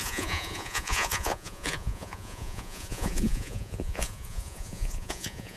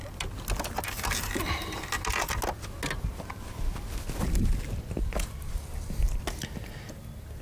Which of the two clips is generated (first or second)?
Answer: first